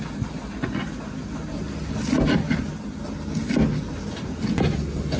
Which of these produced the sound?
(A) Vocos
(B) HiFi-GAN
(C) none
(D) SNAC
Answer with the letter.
C